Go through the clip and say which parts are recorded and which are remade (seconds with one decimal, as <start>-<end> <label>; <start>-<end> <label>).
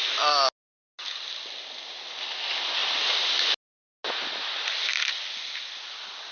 0.0-6.3 recorded